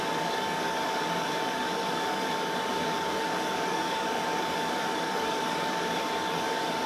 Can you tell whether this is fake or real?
fake